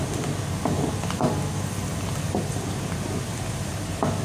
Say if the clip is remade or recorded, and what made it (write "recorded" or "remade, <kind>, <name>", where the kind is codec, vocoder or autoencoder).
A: recorded